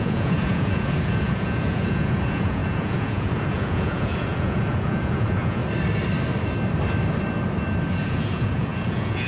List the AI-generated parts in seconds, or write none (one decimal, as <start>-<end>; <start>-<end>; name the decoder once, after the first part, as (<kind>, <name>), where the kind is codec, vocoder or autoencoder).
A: 0.0-5.6 (vocoder, Vocos); 7.9-9.3